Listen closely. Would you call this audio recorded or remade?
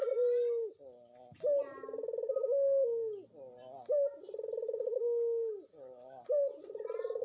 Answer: recorded